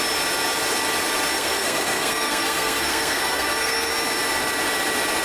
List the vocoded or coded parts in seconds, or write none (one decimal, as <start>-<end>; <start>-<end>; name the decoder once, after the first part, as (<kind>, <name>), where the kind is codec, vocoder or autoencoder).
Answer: 1.3-3.9 (codec, SNAC)